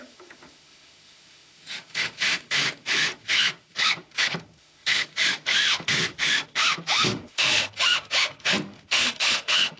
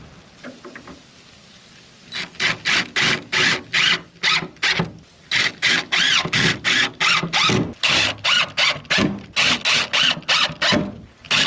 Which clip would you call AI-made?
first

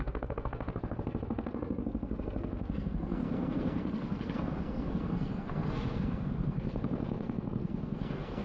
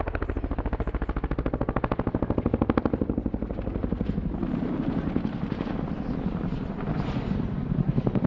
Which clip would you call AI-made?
first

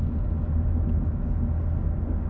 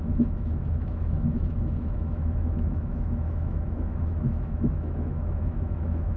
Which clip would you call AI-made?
second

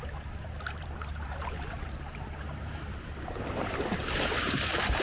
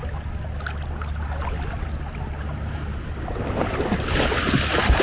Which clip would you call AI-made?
first